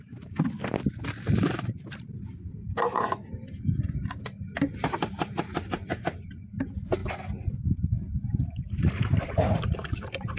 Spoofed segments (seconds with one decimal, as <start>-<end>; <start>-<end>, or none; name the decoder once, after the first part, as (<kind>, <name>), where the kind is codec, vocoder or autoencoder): 0.0-7.0 (vocoder, BigVGAN v2); 7.5-10.4